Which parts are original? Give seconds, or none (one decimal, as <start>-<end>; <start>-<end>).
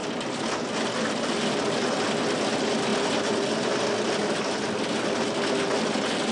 0.0-6.3